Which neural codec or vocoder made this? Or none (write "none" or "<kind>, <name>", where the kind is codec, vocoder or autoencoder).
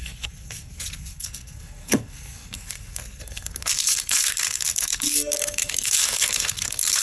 codec, SNAC